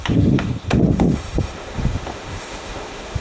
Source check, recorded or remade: remade